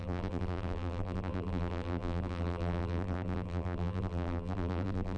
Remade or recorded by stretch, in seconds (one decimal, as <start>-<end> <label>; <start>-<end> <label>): 0.0-5.2 remade